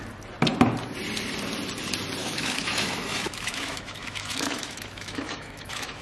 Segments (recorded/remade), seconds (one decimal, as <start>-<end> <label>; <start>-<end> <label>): 0.0-2.2 recorded; 2.2-6.0 remade